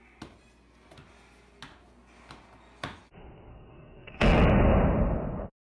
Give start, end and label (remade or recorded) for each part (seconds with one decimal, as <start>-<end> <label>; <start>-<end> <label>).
0.0-3.5 recorded; 3.5-4.4 remade; 4.4-5.7 recorded